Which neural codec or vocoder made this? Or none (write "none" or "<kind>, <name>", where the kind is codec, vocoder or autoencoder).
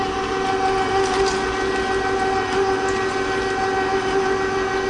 none